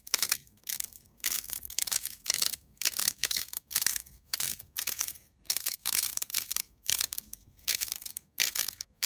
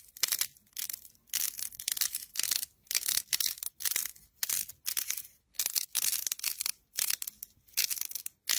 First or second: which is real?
second